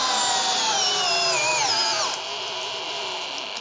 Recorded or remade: recorded